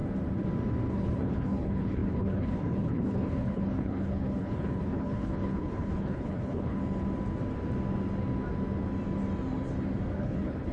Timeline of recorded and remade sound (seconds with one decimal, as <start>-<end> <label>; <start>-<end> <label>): 0.0-0.9 recorded; 0.9-6.8 remade; 6.8-10.2 recorded; 10.2-10.7 remade